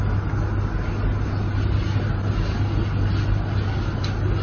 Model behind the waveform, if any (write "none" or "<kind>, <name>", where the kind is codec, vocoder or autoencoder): none